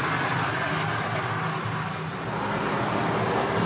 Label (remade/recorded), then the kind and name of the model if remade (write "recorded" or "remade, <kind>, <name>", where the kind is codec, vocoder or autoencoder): recorded